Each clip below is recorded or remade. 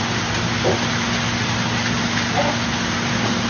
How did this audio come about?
recorded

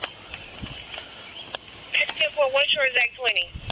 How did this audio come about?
recorded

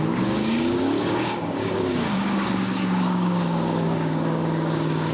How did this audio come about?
remade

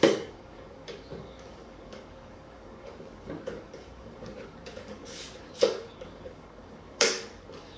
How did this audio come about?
remade